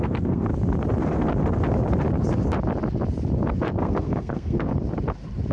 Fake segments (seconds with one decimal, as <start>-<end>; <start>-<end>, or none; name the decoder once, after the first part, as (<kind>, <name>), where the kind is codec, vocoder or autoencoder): 0.0-0.5 (codec, SNAC); 3.8-4.7